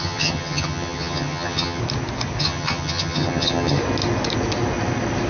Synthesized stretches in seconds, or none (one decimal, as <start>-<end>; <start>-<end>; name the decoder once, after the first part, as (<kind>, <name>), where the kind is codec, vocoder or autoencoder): 0.0-1.8 (vocoder, HiFi-GAN); 2.4-3.8